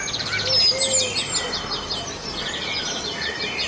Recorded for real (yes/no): yes